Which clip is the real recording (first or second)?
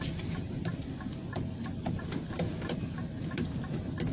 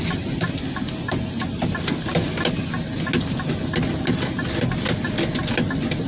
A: second